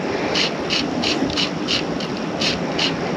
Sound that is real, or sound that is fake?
real